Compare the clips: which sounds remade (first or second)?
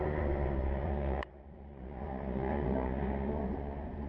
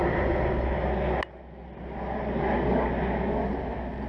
first